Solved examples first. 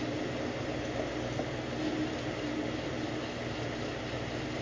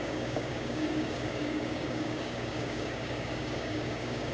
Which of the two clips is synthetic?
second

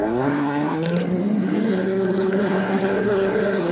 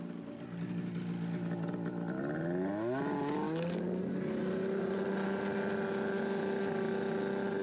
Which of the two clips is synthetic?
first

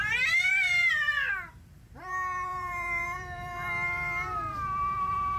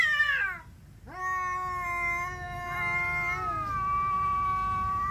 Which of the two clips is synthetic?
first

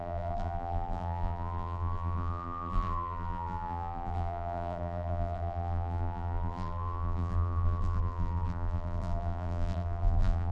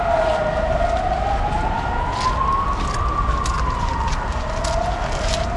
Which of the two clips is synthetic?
first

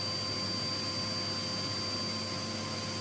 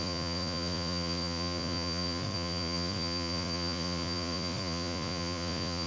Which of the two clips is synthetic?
second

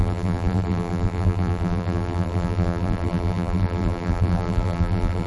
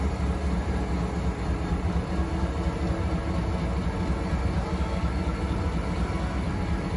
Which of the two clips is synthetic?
first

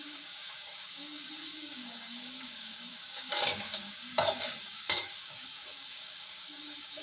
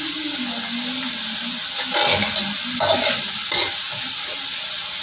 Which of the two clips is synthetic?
first